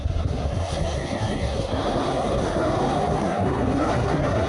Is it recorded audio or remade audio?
remade